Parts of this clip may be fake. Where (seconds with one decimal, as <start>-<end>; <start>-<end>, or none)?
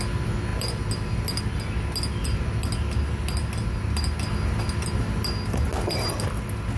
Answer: none